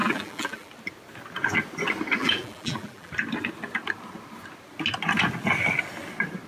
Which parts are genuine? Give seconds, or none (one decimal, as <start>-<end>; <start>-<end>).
0.7-2.2; 3.1-6.5